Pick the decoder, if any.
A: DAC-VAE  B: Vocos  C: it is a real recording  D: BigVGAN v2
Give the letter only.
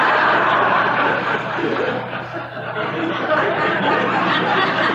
D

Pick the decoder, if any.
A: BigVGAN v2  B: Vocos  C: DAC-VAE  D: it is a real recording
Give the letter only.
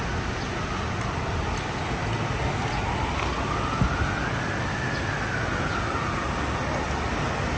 D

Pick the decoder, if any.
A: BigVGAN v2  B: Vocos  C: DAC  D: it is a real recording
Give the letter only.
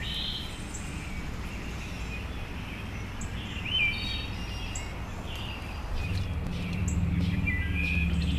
D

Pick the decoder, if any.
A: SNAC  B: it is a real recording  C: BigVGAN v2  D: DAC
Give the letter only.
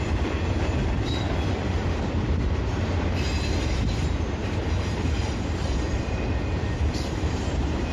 C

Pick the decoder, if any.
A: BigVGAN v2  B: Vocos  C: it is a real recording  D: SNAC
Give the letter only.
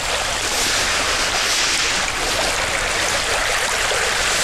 C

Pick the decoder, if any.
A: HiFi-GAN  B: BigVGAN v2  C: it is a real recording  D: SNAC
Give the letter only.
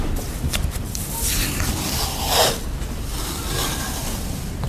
B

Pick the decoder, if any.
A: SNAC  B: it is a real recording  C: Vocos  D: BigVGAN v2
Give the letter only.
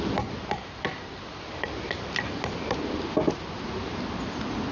B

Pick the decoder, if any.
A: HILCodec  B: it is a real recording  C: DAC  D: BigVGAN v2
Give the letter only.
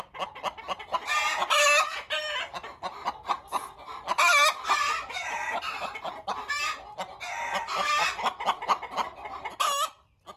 B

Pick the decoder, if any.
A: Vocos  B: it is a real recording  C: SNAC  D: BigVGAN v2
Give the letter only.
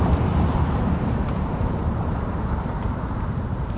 D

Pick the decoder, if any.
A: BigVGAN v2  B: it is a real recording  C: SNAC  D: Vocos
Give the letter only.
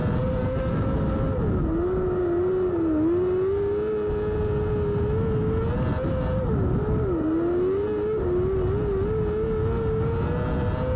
B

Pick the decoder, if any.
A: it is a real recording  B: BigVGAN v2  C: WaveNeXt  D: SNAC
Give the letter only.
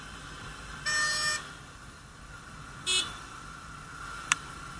A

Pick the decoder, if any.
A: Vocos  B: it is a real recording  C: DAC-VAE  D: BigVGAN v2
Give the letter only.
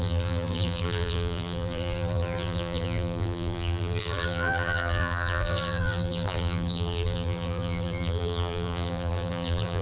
D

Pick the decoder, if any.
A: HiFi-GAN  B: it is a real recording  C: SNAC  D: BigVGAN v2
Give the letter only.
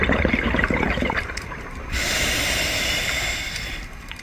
D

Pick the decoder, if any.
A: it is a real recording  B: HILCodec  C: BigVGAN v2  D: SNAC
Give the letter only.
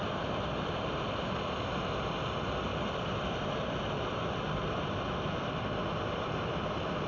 C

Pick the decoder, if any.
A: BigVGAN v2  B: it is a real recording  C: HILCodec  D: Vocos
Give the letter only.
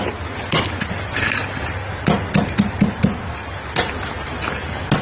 B